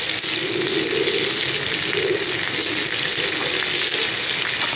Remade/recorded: recorded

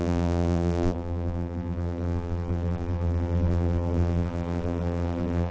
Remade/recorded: remade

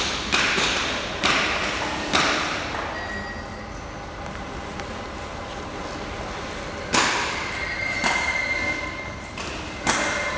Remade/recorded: recorded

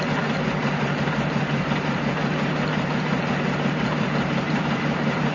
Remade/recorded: remade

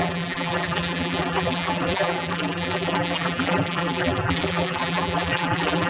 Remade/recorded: remade